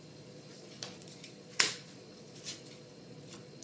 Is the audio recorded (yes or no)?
no